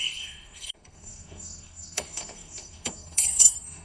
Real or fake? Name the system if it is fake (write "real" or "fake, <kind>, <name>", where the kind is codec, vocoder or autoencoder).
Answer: fake, codec, SNAC